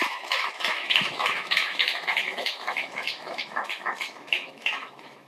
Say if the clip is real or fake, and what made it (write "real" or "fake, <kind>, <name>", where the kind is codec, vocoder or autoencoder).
fake, autoencoder, DAC-VAE